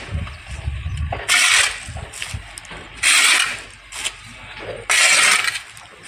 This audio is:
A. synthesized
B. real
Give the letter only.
B